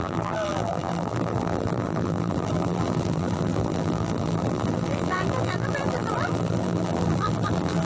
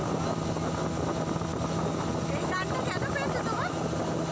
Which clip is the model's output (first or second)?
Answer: first